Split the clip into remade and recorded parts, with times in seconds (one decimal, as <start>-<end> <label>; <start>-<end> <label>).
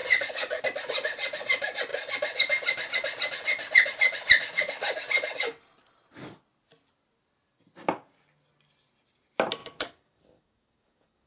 0.0-0.6 remade; 0.6-9.6 recorded; 9.6-11.3 remade